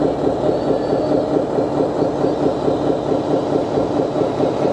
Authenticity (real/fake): real